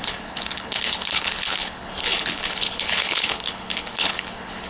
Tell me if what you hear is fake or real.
fake